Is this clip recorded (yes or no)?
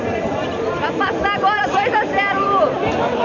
no